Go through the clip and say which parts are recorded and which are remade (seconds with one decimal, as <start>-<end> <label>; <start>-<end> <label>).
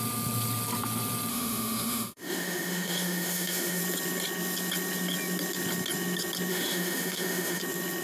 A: 0.0-1.3 recorded; 1.3-3.8 remade; 3.8-6.5 recorded; 6.5-7.6 remade; 7.6-8.0 recorded